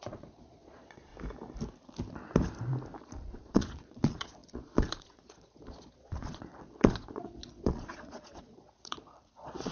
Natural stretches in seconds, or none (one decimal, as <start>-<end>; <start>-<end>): 1.1-3.0